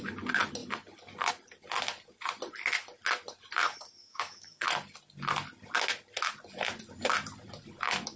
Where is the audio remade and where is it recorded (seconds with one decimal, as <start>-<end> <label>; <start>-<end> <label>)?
0.0-4.0 recorded; 4.0-4.6 remade; 4.6-8.2 recorded